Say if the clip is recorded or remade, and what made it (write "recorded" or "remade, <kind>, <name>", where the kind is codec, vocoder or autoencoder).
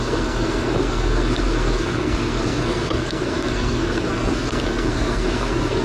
remade, codec, SNAC